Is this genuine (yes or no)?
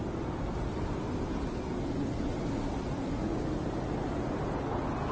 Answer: yes